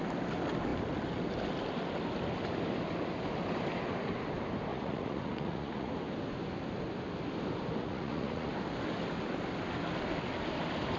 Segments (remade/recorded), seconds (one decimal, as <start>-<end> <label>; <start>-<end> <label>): 0.0-4.7 recorded; 4.7-5.9 remade; 5.9-7.8 recorded; 7.8-8.5 remade; 8.5-11.0 recorded